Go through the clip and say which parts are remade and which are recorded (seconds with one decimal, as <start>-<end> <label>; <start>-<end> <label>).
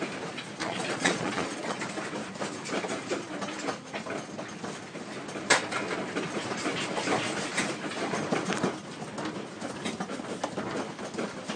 0.0-0.6 recorded; 0.6-1.8 remade; 1.8-11.6 recorded